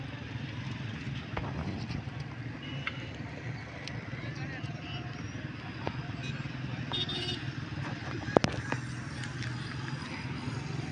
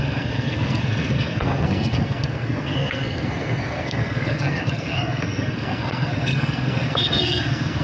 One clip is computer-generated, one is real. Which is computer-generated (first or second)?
second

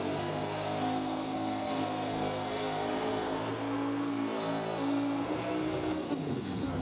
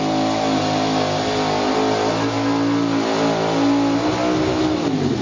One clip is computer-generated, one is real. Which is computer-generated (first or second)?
first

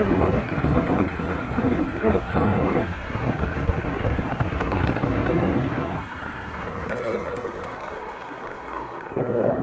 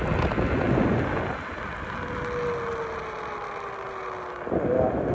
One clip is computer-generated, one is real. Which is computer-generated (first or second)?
first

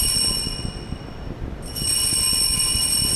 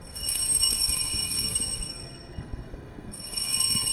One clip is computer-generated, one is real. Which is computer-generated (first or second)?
second